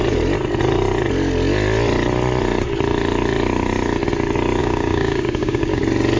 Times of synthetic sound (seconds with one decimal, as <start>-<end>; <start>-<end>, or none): 4.6-5.8